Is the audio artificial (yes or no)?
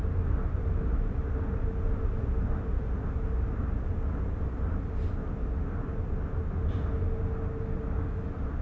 no